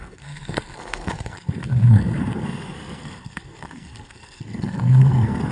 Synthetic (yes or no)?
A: yes